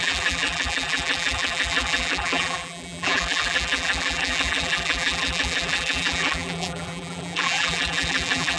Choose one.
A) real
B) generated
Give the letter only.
B